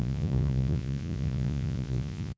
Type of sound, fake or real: fake